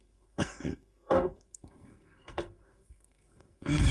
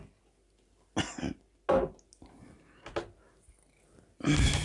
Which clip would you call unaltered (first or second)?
second